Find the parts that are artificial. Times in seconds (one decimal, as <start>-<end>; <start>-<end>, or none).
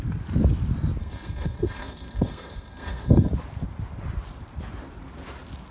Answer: 1.0-3.3